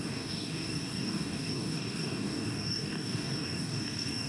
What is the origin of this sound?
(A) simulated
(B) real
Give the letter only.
A